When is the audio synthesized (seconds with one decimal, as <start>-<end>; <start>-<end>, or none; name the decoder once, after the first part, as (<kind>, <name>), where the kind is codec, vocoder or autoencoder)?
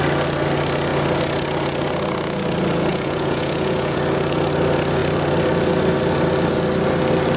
2.9-4.0 (vocoder, Vocos)